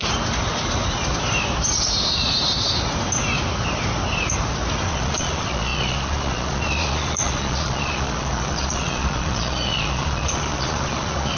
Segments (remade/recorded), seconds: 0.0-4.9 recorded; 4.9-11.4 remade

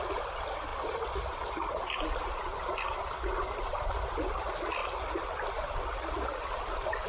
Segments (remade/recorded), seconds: 0.0-7.1 recorded

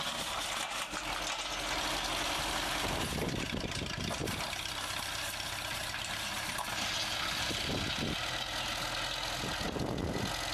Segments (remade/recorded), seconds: 0.0-5.8 recorded; 5.8-6.6 remade; 6.6-10.5 recorded

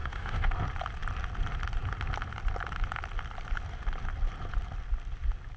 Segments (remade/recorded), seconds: 0.0-0.5 remade; 0.5-5.6 recorded

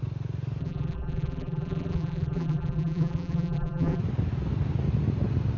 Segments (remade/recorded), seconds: 0.0-0.6 recorded; 0.6-4.0 remade; 4.0-5.6 recorded

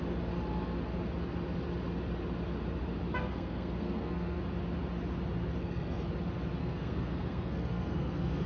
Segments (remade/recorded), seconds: 0.0-3.1 recorded; 3.1-4.4 remade; 4.4-5.6 recorded; 5.6-6.1 remade; 6.1-6.6 recorded; 6.6-8.5 remade